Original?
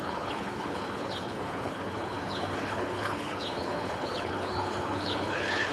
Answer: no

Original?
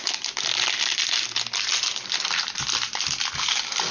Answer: yes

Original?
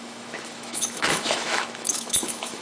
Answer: no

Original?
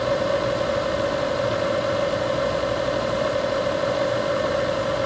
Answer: no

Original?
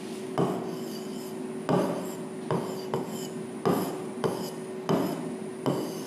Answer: yes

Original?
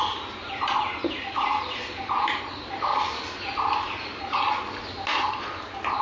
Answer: yes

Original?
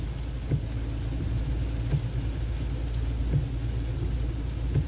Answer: yes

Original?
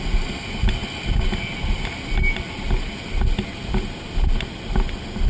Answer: yes